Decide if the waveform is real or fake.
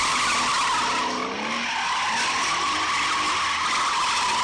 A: real